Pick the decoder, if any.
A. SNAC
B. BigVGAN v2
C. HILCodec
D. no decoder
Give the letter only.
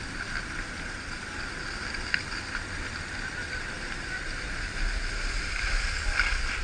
D